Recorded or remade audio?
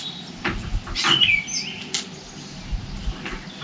recorded